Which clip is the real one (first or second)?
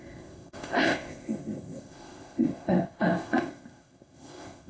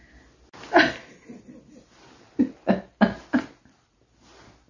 second